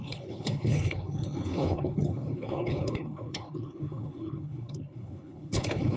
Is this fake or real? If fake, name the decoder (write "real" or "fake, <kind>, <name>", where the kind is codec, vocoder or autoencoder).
fake, codec, HILCodec